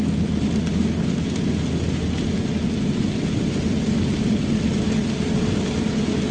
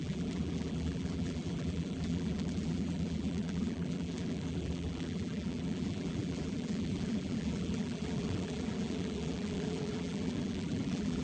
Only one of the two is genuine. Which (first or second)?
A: first